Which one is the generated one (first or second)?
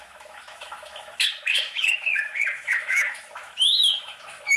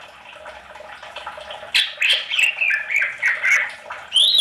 first